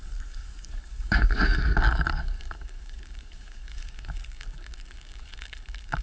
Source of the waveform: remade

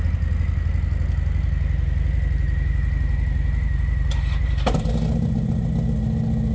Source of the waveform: recorded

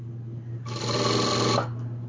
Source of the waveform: recorded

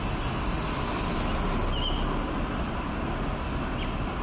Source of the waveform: recorded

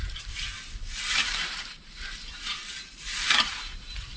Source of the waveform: remade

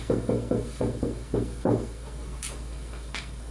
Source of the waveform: remade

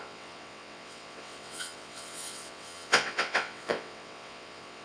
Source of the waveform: remade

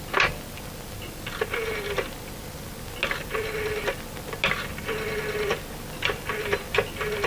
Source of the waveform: recorded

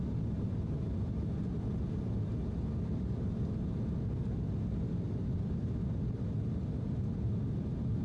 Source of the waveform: recorded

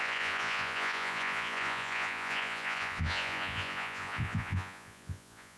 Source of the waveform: remade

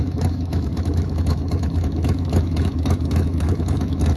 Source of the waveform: remade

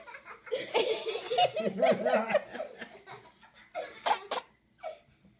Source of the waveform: recorded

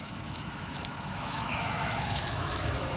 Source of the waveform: remade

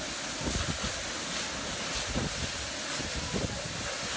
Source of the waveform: recorded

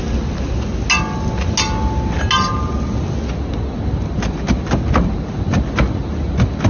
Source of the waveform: recorded